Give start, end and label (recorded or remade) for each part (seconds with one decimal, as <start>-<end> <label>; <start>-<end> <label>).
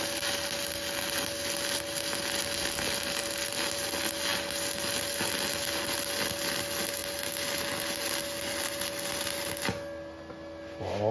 0.0-11.1 recorded